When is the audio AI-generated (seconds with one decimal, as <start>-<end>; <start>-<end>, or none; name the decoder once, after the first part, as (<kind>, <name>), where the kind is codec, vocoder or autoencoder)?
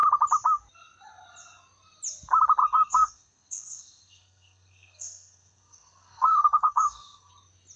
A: 2.6-7.3 (codec, SNAC)